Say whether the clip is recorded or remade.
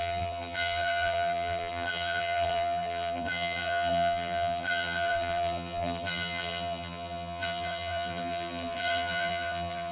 remade